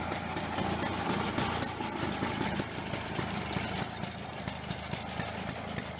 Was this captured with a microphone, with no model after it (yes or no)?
yes